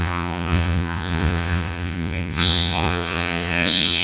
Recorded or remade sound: remade